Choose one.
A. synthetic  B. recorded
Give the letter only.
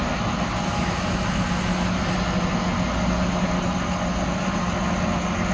B